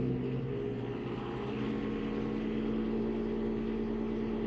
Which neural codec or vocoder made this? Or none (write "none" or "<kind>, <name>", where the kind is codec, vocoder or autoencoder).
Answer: none